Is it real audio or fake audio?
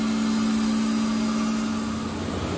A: real